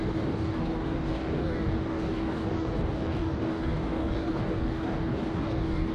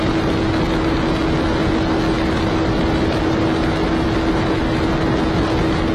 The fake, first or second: first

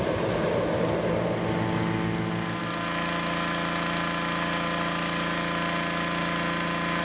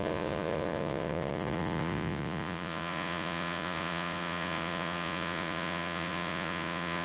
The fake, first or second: second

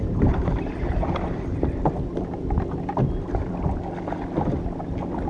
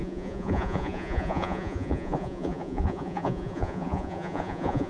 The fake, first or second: second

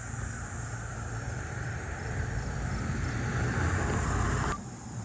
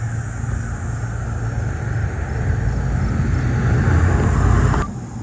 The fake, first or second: first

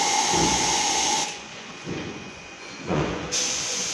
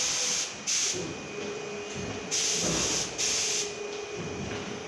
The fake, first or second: first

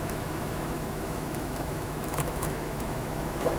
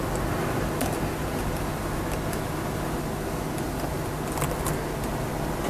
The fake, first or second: first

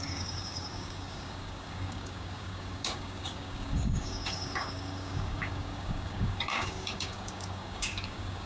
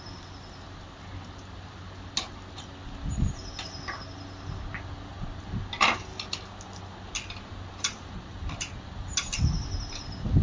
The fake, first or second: first